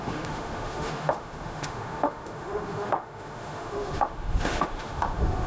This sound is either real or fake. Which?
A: fake